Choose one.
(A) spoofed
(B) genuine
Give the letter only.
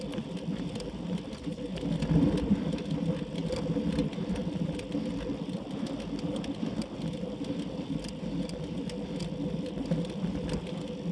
B